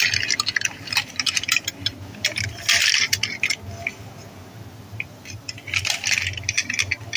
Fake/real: real